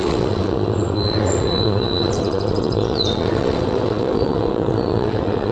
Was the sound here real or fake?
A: fake